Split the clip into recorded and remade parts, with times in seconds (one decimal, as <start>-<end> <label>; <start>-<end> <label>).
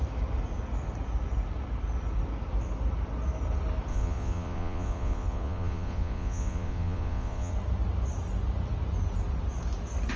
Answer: 0.0-3.9 recorded; 3.9-7.5 remade; 7.5-10.2 recorded